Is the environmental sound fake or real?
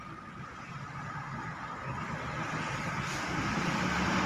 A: real